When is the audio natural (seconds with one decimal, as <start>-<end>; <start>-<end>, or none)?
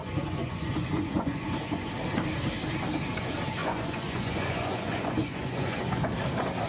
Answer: 1.9-3.6; 6.1-6.7